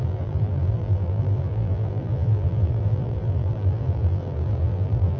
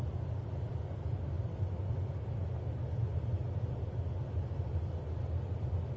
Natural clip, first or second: second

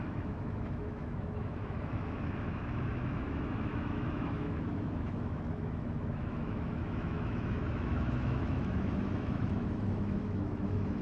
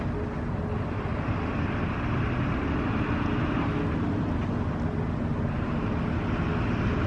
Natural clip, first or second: second